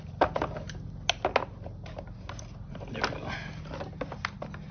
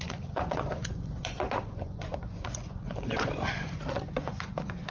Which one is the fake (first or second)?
second